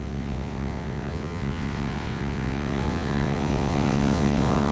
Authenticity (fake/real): fake